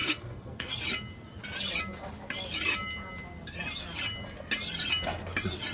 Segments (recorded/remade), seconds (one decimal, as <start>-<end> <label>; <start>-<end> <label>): 0.0-0.7 remade; 0.7-5.7 recorded